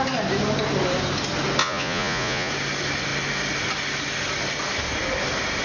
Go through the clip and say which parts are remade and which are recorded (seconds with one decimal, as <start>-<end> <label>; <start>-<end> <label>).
0.0-1.6 recorded; 1.6-2.5 remade; 2.5-5.6 recorded